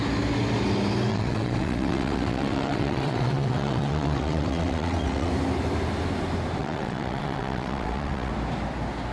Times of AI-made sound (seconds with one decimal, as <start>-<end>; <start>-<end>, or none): 1.1-5.3; 6.6-8.3